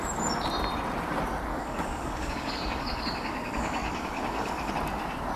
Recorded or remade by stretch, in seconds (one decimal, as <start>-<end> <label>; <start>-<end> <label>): 0.0-1.5 recorded; 1.5-4.7 remade; 4.7-5.4 recorded